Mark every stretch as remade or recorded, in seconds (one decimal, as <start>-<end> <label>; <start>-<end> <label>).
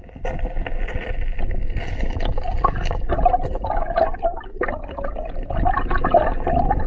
0.0-6.9 recorded